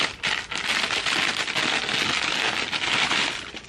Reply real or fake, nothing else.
real